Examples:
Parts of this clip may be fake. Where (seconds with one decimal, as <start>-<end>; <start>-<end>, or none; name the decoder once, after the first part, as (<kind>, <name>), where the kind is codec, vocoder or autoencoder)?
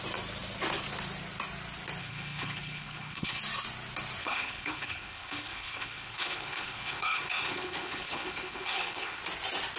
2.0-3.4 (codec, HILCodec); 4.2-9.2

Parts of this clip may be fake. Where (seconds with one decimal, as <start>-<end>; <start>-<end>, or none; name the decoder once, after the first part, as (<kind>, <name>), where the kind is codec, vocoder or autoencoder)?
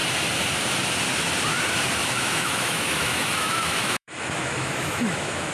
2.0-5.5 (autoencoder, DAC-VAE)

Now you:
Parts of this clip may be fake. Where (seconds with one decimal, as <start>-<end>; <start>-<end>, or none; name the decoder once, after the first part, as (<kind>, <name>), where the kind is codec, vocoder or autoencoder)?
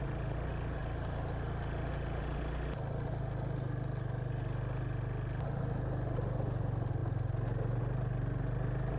none